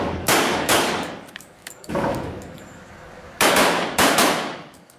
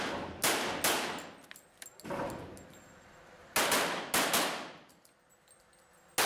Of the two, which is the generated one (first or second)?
first